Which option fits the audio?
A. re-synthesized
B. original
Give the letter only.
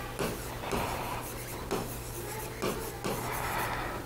B